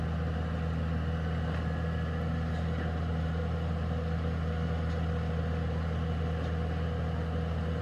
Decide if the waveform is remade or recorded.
recorded